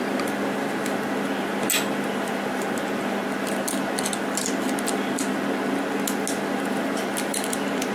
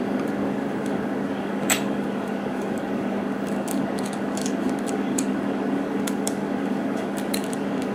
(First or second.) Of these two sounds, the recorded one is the first